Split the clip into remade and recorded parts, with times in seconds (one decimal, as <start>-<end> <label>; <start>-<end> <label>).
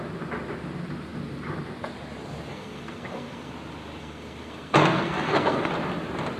0.0-2.5 recorded; 2.5-3.5 remade; 3.5-4.0 recorded; 4.0-5.7 remade; 5.7-6.4 recorded